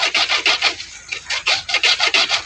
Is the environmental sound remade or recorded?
recorded